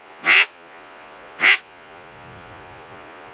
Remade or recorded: remade